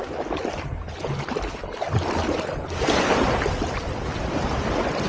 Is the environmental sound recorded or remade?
recorded